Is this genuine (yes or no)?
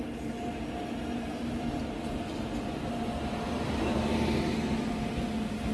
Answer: yes